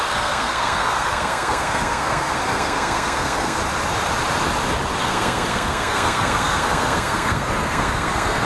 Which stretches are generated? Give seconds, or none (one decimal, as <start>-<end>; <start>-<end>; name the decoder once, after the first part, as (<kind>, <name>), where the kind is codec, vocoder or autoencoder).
0.0-3.6 (codec, SNAC); 5.0-8.5